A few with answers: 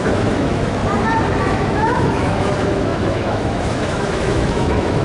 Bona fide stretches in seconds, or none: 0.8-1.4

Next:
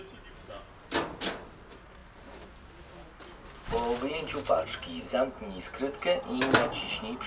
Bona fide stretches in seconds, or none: 0.0-7.3

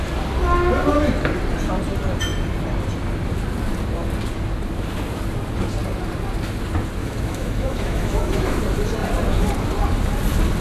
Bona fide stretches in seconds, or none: 0.0-7.0; 8.6-10.6

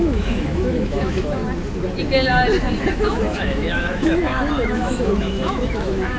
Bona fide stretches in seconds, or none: 1.4-2.9

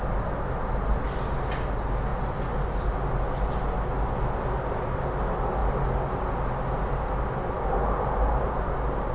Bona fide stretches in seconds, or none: 0.0-9.1

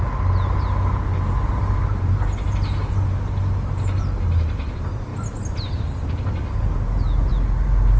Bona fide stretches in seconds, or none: 0.0-8.0

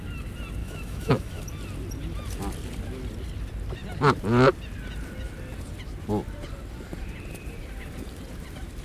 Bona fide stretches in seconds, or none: 0.0-0.6; 1.4-8.8

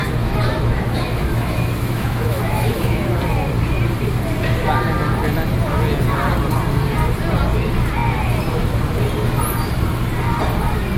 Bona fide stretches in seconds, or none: 3.2-11.0